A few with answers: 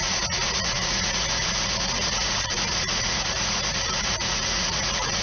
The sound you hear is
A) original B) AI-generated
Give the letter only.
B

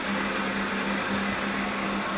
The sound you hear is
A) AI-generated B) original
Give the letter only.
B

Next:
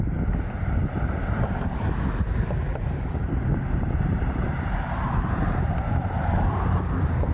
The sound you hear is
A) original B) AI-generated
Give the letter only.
B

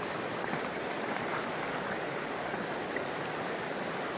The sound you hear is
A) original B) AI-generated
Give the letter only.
A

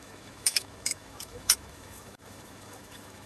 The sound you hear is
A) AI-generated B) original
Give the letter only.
A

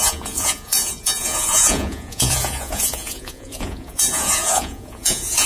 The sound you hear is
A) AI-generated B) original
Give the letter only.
A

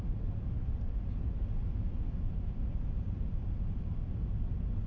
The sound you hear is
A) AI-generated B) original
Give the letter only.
B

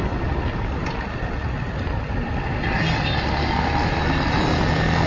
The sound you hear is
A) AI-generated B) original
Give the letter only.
B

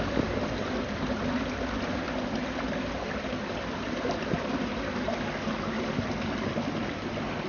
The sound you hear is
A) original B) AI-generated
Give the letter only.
A